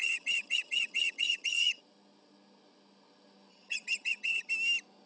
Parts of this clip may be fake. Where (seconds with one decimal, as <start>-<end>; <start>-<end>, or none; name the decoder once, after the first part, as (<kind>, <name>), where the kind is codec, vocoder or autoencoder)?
0.0-1.8 (vocoder, HiFi-GAN); 3.5-4.5